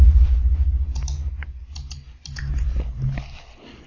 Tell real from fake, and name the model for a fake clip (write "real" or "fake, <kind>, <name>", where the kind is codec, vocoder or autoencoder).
real